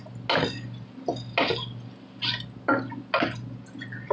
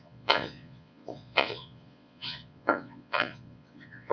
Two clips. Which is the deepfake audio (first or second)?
second